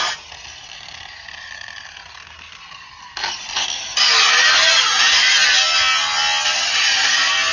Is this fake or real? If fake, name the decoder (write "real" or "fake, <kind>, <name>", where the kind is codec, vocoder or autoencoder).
real